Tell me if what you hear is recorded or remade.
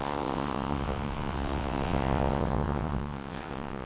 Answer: remade